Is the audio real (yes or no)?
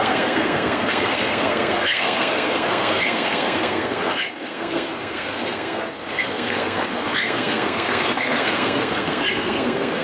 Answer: no